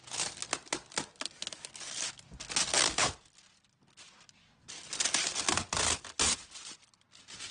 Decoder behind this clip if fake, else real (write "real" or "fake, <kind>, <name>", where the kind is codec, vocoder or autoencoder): real